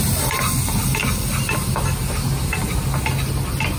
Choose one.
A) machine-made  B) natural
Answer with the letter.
B